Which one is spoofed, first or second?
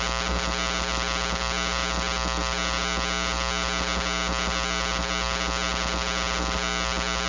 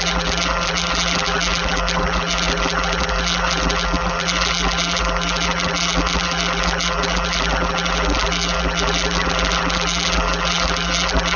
second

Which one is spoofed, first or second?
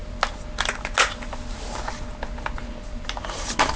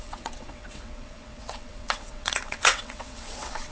second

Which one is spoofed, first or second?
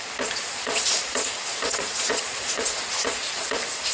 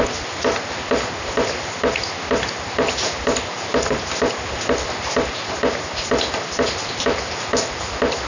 first